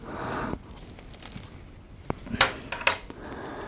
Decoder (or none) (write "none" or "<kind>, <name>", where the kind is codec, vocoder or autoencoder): none